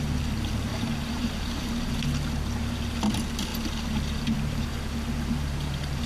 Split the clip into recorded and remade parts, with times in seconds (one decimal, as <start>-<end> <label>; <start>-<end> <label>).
0.0-0.7 recorded; 0.7-2.0 remade; 2.0-6.1 recorded